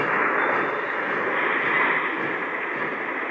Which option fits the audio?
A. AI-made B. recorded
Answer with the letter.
B